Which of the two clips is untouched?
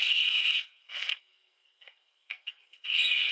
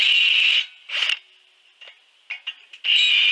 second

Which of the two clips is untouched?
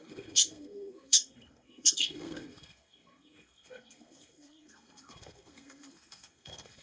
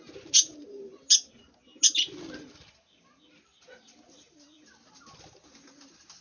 second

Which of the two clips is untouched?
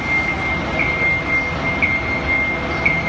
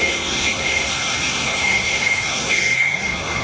first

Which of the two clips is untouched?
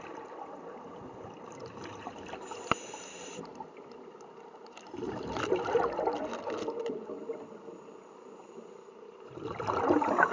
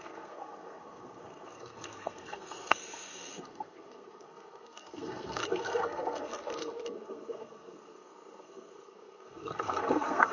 first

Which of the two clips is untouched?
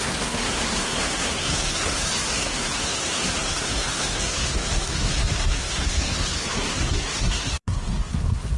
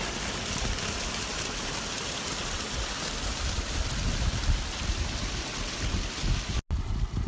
second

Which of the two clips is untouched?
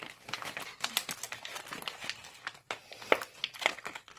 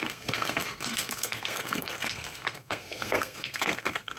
first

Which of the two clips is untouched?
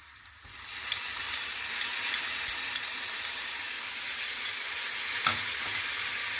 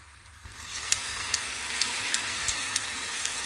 first